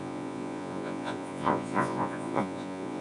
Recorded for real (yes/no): no